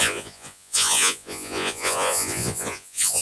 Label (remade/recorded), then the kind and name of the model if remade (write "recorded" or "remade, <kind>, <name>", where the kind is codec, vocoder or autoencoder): remade, vocoder, Vocos